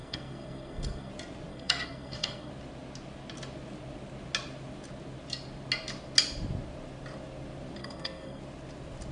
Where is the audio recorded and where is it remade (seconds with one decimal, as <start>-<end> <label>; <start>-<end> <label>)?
0.0-1.1 remade; 1.1-1.5 recorded; 1.5-2.5 remade; 2.5-7.8 recorded; 7.8-8.4 remade; 8.4-9.1 recorded